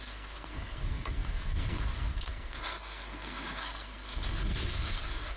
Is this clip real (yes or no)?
no